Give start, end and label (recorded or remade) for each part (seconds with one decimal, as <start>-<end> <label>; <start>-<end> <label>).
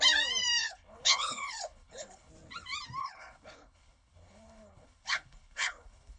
0.0-0.6 recorded; 0.6-2.3 remade; 2.3-3.0 recorded; 3.0-6.2 remade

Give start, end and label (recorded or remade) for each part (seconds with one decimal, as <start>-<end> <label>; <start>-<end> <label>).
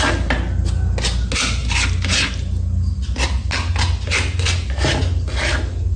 0.0-6.0 recorded